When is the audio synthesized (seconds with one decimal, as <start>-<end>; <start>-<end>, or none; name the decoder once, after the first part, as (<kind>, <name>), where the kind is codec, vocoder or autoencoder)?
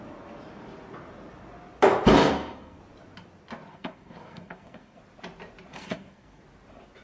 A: 2.2-2.8 (codec, SNAC); 3.7-5.0; 5.7-6.4